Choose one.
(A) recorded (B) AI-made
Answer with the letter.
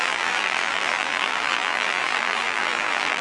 B